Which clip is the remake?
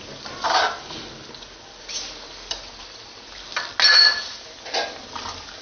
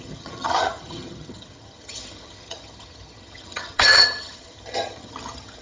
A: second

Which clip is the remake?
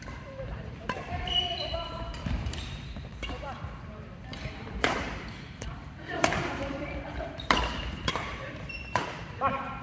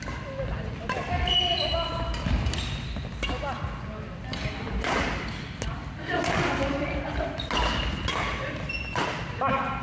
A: first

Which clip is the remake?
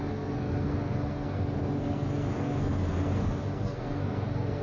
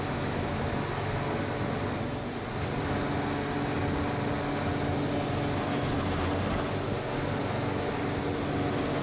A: first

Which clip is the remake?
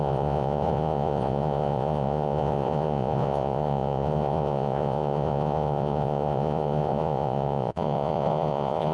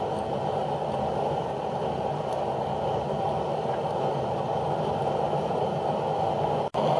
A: first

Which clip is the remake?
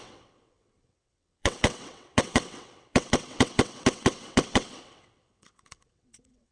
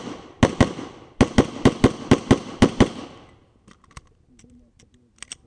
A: first